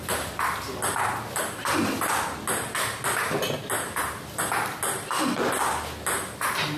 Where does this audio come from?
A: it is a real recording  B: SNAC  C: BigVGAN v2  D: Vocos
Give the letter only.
A